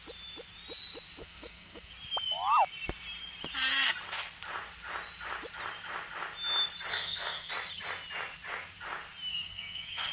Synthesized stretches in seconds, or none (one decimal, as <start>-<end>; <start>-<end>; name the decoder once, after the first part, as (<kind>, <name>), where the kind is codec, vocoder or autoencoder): 1.2-1.9 (codec, SNAC); 6.9-7.5; 9.3-10.1